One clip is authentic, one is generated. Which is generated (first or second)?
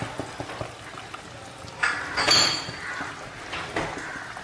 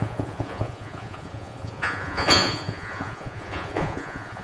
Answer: second